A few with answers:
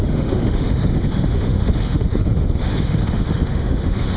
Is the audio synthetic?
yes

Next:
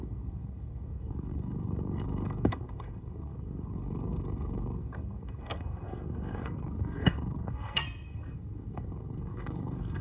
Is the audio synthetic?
yes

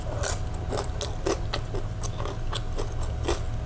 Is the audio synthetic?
no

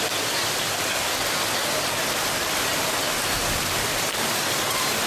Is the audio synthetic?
no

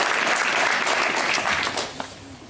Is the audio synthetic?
no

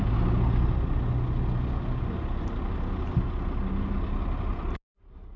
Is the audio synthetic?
no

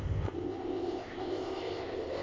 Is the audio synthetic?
yes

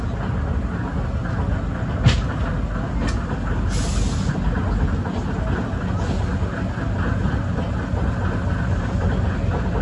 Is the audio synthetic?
no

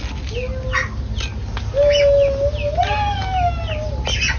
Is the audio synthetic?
no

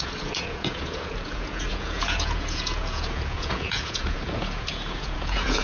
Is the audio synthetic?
yes